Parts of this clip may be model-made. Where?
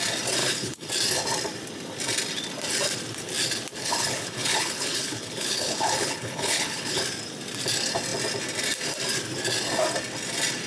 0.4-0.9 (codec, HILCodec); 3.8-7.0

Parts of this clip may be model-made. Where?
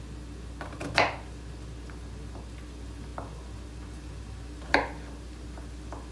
none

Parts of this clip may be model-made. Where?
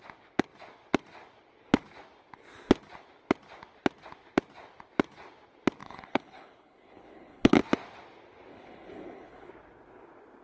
5.8-7.6 (codec, HILCodec); 8.5-9.5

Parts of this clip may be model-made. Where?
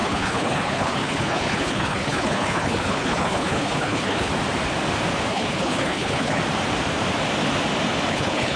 0.0-4.3 (codec, HILCodec); 5.3-6.4; 8.1-8.6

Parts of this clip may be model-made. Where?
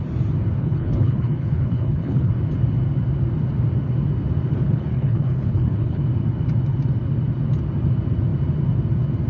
0.6-2.3 (codec, HILCodec); 4.5-6.0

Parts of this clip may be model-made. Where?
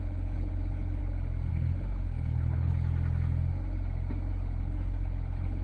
0.0-1.0 (codec, HILCodec); 1.5-2.7; 4.6-5.6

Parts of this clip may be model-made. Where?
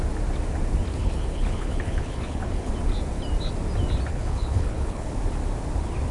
0.9-2.7 (codec, HILCodec); 4.1-5.1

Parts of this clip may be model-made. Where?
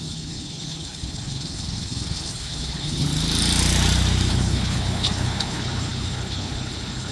0.0-3.1 (codec, HILCodec); 4.3-7.1